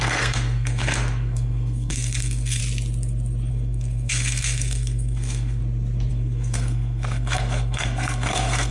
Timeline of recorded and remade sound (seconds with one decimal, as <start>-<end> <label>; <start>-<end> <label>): 0.0-2.6 remade; 2.6-3.5 recorded; 3.5-5.6 remade; 5.6-6.1 recorded; 6.1-8.7 remade